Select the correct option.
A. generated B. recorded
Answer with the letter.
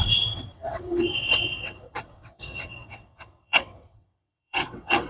A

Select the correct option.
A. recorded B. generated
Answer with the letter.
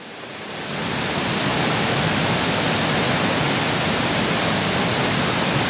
A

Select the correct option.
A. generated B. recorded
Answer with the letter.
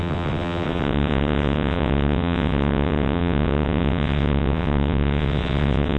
A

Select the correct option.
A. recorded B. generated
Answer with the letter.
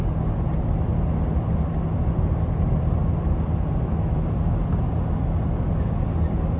A